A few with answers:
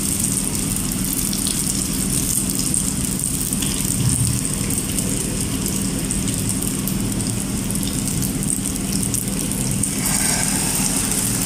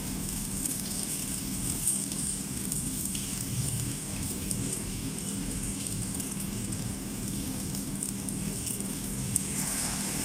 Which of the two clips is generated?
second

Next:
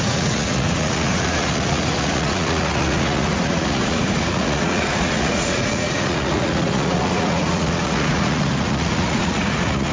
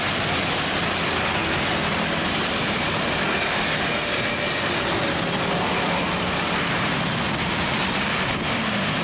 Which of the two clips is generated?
first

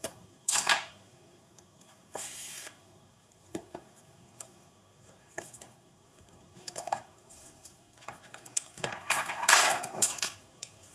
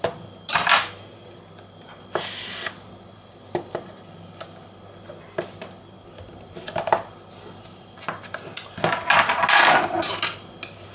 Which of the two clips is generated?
first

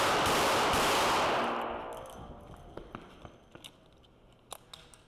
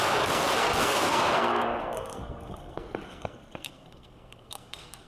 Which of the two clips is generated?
second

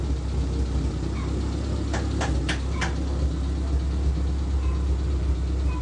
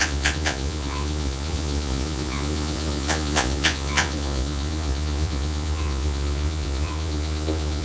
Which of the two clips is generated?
second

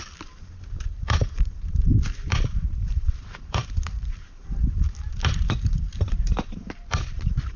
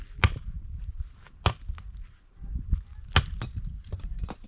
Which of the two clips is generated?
first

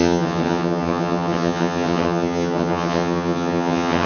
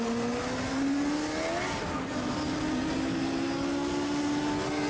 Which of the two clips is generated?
first